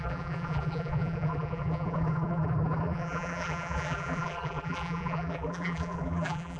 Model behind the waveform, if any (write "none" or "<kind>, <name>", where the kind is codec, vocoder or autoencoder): vocoder, BigVGAN v2